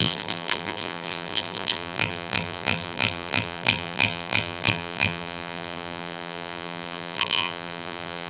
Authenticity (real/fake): fake